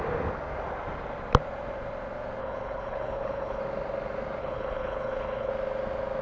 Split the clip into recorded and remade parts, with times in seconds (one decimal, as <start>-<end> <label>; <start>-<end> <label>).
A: 0.0-2.4 recorded; 2.4-3.6 remade; 3.6-4.4 recorded; 4.4-5.5 remade; 5.5-6.2 recorded